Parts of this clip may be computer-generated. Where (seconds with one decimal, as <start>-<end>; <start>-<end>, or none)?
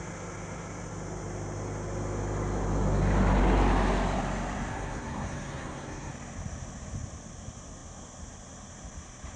4.7-6.1